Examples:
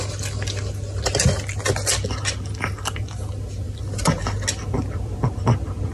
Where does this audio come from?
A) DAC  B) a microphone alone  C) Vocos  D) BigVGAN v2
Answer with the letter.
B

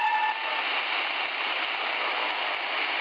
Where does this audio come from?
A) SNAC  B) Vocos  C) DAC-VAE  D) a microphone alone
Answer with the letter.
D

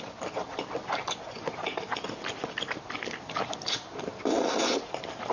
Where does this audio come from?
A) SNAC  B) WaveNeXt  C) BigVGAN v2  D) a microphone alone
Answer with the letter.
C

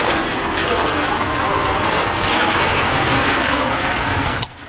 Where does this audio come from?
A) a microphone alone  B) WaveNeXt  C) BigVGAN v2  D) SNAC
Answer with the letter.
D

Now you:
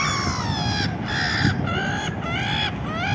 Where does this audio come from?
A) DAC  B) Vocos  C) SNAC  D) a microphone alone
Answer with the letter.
D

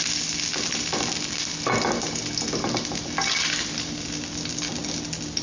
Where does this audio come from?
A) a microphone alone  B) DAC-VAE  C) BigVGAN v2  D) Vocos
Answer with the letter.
A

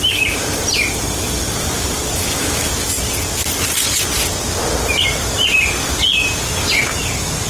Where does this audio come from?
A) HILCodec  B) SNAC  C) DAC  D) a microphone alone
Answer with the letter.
D